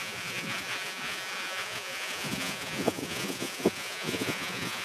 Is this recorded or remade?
remade